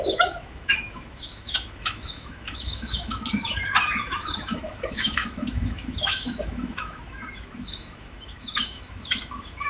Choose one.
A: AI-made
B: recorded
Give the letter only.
A